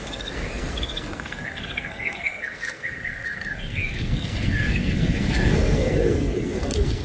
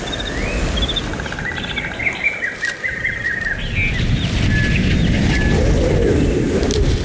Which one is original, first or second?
second